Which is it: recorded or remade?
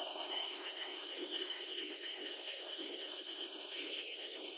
remade